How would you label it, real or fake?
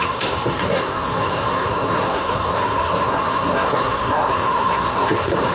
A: fake